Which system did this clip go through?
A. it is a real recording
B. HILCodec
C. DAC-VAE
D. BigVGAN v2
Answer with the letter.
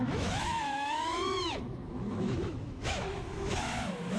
C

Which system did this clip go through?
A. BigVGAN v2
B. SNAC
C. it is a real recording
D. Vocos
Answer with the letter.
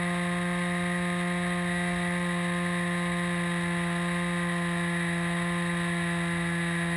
C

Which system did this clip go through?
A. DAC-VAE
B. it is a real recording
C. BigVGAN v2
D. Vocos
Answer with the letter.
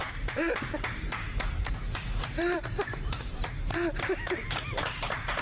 C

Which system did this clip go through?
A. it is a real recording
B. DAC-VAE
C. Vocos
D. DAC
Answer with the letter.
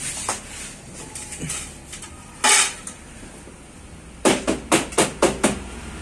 A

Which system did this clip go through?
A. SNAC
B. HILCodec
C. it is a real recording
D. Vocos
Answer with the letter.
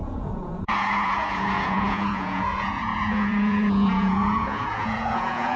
D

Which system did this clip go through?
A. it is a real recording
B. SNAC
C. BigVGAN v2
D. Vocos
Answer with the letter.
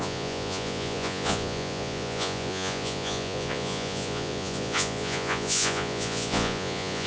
D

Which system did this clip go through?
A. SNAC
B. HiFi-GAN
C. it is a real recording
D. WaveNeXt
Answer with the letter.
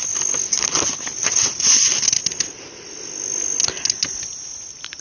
C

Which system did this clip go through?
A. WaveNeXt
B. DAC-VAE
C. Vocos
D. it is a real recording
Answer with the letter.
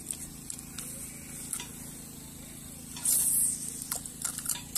D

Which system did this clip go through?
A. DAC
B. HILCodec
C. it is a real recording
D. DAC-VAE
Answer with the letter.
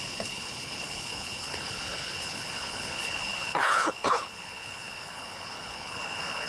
B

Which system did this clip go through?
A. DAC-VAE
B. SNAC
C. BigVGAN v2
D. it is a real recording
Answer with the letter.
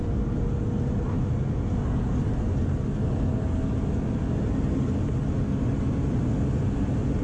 D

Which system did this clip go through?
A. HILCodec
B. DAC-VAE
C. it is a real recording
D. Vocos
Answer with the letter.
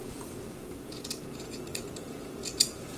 D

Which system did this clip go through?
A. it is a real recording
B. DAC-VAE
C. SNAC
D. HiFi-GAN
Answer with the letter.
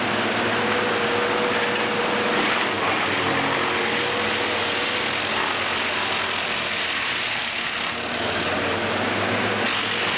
A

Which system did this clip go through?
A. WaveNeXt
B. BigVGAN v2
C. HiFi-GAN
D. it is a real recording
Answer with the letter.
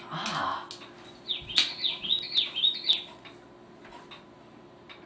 D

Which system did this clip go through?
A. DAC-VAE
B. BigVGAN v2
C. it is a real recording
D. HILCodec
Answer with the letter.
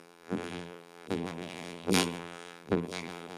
B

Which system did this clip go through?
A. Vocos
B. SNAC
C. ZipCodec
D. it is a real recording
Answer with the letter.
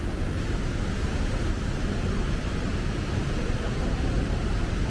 D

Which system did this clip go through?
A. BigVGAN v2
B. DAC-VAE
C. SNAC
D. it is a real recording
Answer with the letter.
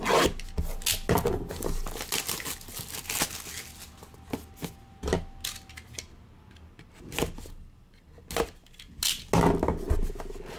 D